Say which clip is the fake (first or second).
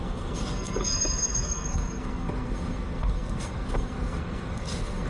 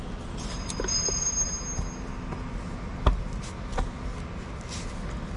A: first